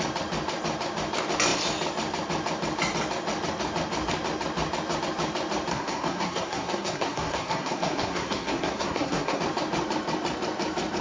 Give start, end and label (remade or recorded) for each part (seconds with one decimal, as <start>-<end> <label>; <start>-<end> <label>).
0.0-5.7 recorded; 5.7-9.4 remade; 9.4-11.0 recorded

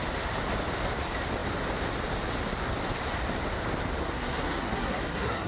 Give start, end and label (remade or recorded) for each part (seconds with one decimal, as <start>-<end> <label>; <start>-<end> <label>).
0.0-4.0 recorded; 4.0-5.5 remade

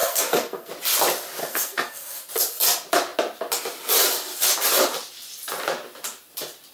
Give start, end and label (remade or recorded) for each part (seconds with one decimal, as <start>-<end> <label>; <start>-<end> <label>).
0.0-0.7 remade; 0.7-1.4 recorded; 1.4-2.2 remade; 2.2-6.7 recorded

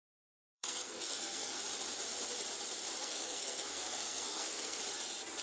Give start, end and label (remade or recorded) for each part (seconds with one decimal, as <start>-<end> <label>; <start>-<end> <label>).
0.0-1.6 remade; 1.6-3.0 recorded; 3.0-4.8 remade; 4.8-5.4 recorded

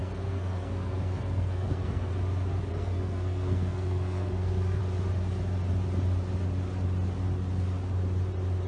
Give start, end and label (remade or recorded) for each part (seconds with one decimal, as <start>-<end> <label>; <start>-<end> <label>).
0.0-2.1 remade; 2.1-2.7 recorded; 2.7-4.8 remade; 4.8-8.7 recorded